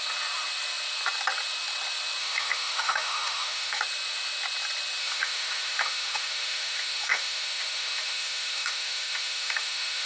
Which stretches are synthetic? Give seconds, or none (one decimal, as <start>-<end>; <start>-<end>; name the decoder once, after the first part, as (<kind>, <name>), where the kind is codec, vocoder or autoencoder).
2.2-3.8 (autoencoder, DAC-VAE); 5.0-10.1